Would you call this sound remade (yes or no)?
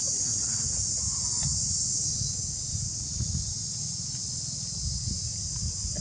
no